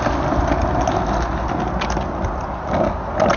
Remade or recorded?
recorded